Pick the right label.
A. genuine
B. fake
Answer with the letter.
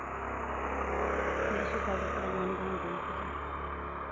A